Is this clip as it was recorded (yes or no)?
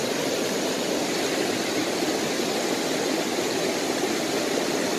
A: yes